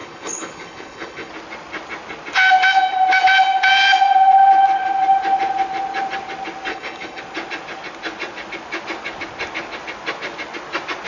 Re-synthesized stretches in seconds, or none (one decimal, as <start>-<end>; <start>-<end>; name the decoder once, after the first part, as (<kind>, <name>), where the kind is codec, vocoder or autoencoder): 0.0-1.3 (codec, HILCodec); 6.7-7.2

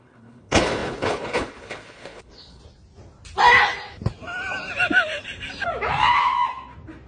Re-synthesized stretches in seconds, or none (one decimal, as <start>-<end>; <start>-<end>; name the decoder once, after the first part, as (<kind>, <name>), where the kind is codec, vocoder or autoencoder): 0.0-2.6 (codec, HILCodec)

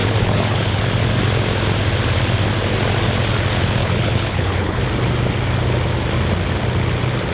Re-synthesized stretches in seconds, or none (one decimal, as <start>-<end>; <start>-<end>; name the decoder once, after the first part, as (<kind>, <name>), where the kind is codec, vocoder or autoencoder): 0.0-0.8 (codec, HILCodec); 3.8-4.8

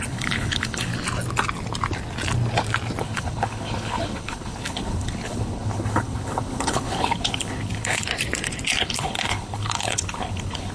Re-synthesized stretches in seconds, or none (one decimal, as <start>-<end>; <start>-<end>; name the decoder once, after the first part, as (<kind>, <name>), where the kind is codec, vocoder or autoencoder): 0.0-0.9 (codec, HILCodec); 3.0-8.1; 8.8-10.7